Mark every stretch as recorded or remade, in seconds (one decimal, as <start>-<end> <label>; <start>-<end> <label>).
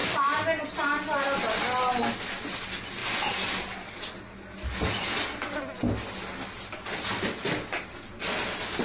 0.0-8.8 recorded